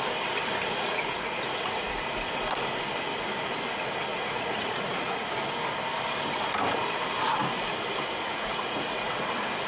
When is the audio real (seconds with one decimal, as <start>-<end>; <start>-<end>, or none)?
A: 0.0-0.7; 1.9-4.1; 5.3-8.3; 9.2-9.7